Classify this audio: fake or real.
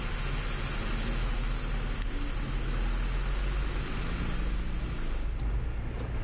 real